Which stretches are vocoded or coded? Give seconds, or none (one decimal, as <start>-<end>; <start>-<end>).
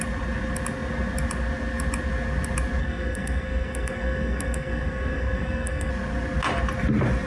2.8-5.9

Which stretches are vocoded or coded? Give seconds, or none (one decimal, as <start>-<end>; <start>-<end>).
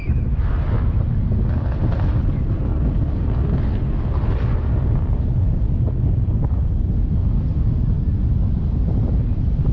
none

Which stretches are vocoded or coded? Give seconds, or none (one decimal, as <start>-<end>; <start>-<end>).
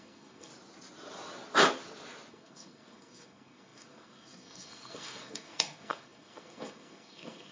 0.0-0.5; 2.3-7.5